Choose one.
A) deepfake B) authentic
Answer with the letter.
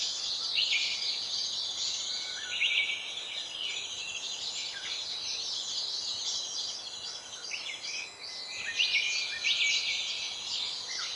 B